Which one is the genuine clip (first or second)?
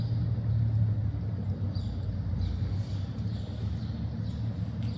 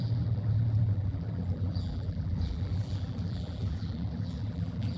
first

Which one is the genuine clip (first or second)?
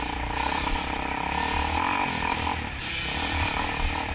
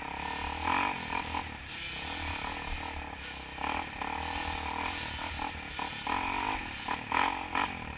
second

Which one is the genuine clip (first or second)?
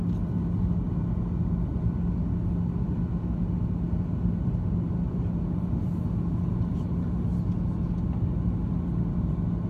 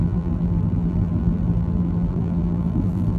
first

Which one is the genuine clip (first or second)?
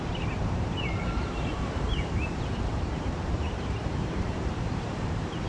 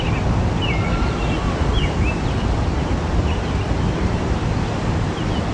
second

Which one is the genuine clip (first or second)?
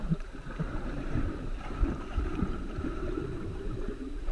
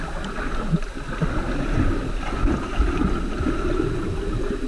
second